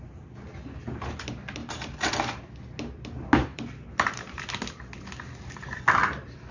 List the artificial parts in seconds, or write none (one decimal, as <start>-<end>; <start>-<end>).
1.6-2.1; 3.5-4.4